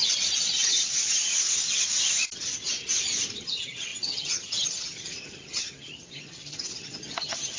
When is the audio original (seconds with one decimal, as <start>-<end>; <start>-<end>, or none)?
0.0-0.7; 1.3-3.4